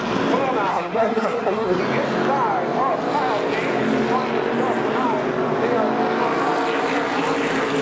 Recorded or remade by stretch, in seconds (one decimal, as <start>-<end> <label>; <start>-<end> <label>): 0.0-0.7 recorded; 0.7-1.8 remade; 1.8-7.8 recorded